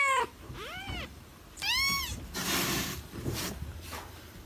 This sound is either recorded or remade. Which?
remade